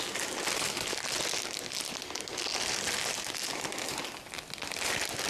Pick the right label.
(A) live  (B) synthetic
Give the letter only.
A